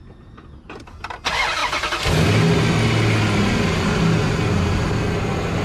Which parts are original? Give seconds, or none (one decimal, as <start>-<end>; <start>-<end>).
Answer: 0.0-5.6

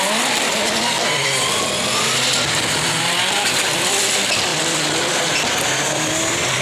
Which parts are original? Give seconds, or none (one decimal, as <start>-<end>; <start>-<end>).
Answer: 0.0-6.6